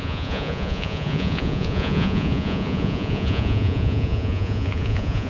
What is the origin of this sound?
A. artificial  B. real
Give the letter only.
A